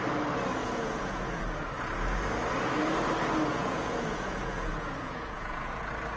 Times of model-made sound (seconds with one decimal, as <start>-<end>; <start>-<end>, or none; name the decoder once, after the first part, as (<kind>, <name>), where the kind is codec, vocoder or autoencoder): 0.6-1.4 (vocoder, Vocos); 3.5-5.8